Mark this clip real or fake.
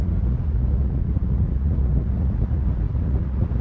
fake